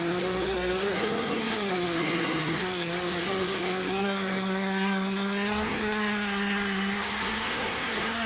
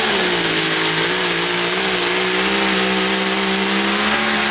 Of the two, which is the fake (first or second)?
first